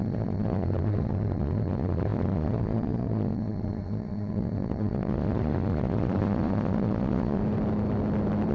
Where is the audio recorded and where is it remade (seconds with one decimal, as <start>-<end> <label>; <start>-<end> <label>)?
0.0-7.4 remade; 7.4-8.5 recorded